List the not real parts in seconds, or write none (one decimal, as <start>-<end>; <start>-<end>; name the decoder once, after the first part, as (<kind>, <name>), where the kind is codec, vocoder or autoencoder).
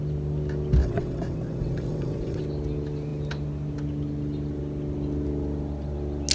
0.8-2.4 (vocoder, WaveNeXt)